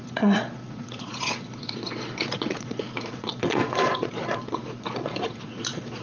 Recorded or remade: remade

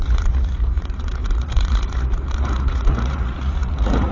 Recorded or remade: remade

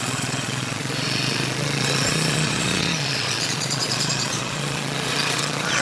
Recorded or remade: remade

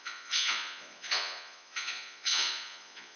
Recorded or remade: remade